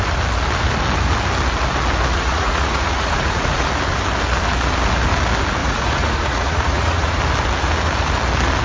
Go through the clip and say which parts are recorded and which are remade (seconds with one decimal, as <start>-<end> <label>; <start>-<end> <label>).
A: 0.0-2.1 recorded; 2.1-3.7 remade; 3.7-5.6 recorded; 5.6-7.2 remade; 7.2-8.6 recorded